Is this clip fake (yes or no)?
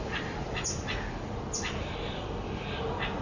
no